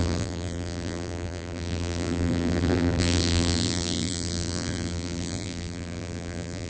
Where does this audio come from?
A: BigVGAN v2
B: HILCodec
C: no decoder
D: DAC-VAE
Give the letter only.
A